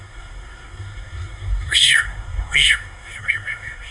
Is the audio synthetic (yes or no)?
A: yes